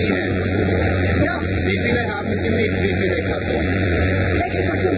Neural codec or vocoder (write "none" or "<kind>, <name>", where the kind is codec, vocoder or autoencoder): vocoder, Vocos